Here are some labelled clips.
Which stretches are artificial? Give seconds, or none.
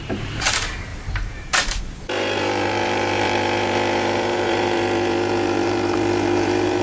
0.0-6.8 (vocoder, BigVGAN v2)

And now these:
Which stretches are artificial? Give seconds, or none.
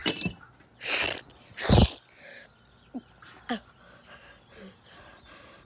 none